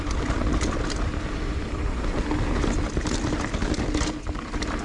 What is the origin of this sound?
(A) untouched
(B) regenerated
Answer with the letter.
A